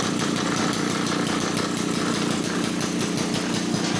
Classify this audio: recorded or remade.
recorded